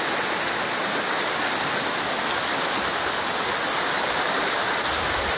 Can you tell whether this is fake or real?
real